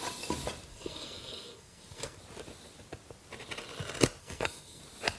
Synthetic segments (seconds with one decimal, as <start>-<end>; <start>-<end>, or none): 0.7-2.2; 4.2-4.8